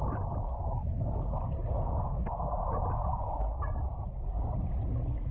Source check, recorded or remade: recorded